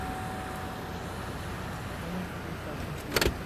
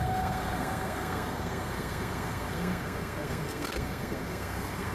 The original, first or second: first